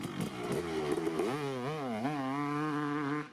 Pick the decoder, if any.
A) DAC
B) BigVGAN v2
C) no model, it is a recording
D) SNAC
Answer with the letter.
C